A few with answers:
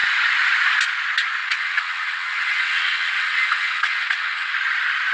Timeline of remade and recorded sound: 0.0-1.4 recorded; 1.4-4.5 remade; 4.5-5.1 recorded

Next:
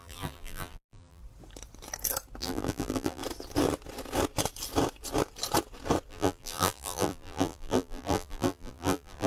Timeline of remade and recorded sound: 0.0-1.2 remade; 1.2-2.4 recorded; 2.4-3.2 remade; 3.2-6.1 recorded; 6.1-9.3 remade

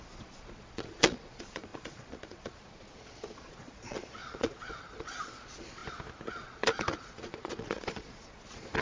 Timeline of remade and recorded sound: 0.0-5.8 remade; 5.8-6.3 recorded; 6.3-8.8 remade

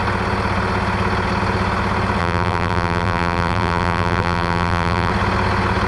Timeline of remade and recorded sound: 0.0-2.2 recorded; 2.2-5.1 remade; 5.1-5.9 recorded

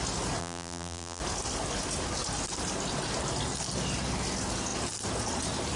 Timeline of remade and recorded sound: 0.0-0.4 recorded; 0.4-1.2 remade; 1.2-5.8 recorded